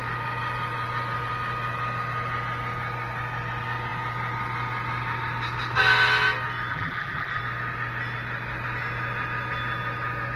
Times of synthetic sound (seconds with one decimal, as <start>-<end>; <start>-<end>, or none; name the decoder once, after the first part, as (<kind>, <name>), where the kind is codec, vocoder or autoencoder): 6.7-7.4 (vocoder, BigVGAN v2)